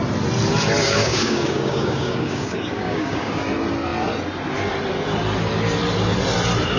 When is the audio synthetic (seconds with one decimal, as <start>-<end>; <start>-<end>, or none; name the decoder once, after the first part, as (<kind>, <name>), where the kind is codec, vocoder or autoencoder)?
0.8-3.4 (codec, DAC)